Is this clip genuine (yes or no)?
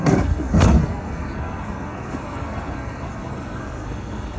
no